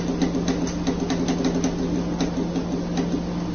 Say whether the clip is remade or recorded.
recorded